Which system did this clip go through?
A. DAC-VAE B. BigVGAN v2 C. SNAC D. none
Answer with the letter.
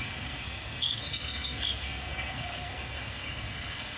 C